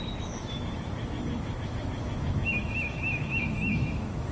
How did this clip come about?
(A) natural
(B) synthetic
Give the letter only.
B